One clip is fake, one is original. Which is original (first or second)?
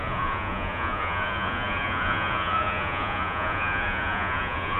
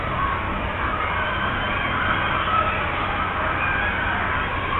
second